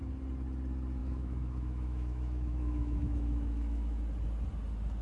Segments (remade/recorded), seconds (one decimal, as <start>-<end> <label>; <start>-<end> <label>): 0.0-1.0 recorded; 1.0-4.0 remade; 4.0-5.0 recorded